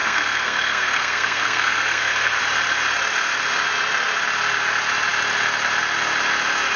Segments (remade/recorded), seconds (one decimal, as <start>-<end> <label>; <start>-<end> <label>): 0.0-2.4 remade; 2.4-6.8 recorded